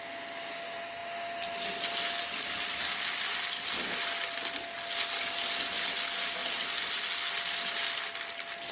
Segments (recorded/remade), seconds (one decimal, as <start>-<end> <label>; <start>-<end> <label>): 0.0-8.7 recorded